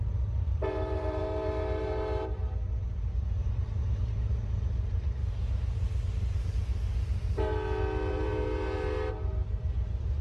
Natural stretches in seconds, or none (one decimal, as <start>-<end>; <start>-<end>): 5.2-8.1